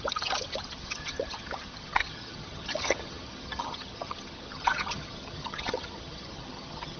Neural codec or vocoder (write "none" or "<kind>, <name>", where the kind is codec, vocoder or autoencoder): vocoder, HiFi-GAN